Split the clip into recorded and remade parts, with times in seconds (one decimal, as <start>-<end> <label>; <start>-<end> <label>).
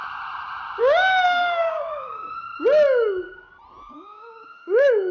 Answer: 0.0-0.8 recorded; 0.8-2.5 remade; 2.5-3.9 recorded; 3.9-5.1 remade